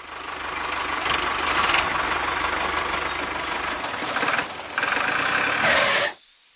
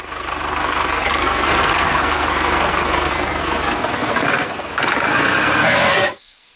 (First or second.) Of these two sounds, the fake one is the second